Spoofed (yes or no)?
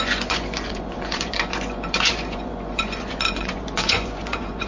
yes